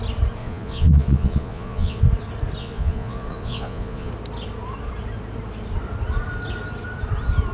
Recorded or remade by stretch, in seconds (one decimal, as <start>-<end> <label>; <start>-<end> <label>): 0.0-0.4 recorded; 0.4-2.0 remade; 2.0-2.6 recorded; 2.6-4.1 remade; 4.1-7.5 recorded

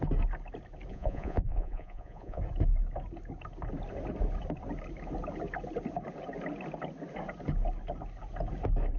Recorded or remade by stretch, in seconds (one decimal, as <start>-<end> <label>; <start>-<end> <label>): 0.0-0.9 recorded; 0.9-2.4 remade; 2.4-9.0 recorded